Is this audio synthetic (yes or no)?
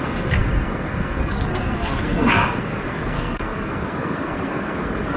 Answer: yes